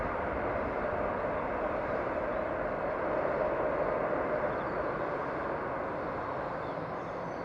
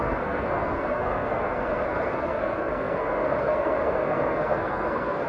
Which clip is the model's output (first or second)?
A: second